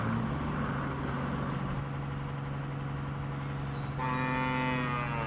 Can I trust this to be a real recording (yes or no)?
yes